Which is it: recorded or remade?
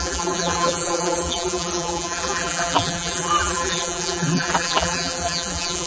remade